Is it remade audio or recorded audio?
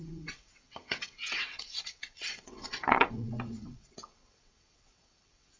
remade